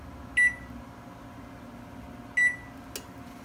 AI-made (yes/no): no